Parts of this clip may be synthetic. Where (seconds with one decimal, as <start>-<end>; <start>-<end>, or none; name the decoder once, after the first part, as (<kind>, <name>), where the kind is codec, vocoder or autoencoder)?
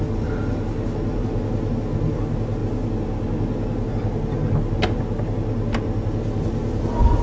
none